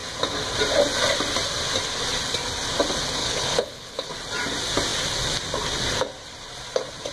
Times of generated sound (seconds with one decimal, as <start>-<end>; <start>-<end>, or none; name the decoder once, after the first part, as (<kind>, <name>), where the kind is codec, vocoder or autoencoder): 3.2-4.1 (codec, HILCodec)